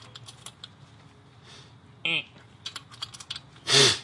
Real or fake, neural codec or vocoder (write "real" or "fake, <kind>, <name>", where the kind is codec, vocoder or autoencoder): real